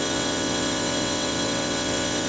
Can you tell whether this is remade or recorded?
remade